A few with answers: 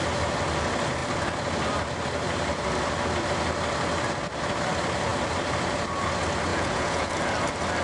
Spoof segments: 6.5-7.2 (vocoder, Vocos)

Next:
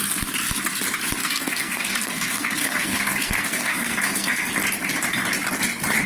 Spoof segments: 1.2-4.5 (codec, SNAC)

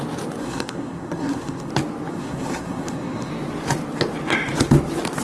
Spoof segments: 0.4-1.7 (codec, SNAC); 2.1-3.3

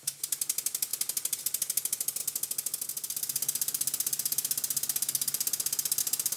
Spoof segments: none

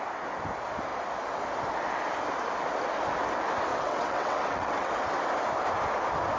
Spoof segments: 3.7-4.9 (vocoder, WaveNeXt)

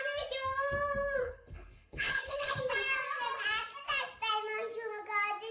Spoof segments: 1.2-2.6 (codec, HILCodec)

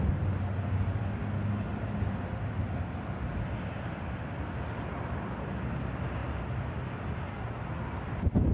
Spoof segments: none

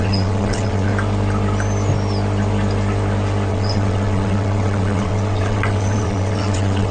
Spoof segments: 0.0-0.9 (vocoder, WaveNeXt); 3.5-6.9